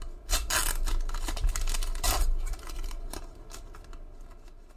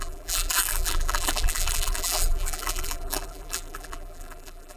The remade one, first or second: second